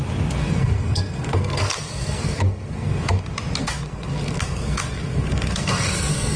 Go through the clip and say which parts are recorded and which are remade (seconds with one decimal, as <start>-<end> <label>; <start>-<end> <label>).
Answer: 0.0-0.4 recorded; 0.4-3.2 remade; 3.2-3.6 recorded; 3.6-6.4 remade